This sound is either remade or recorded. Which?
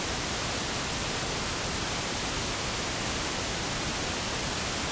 recorded